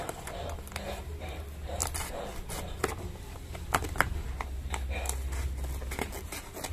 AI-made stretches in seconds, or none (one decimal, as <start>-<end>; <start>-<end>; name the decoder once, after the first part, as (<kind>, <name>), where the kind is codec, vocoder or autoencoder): 1.8-3.2 (vocoder, BigVGAN v2)